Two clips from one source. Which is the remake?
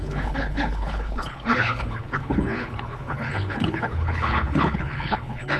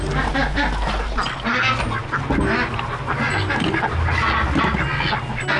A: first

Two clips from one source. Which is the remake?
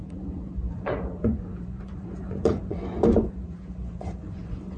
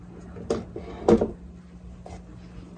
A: first